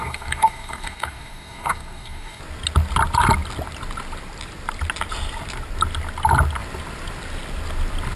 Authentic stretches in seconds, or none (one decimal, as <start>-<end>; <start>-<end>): 2.4-8.2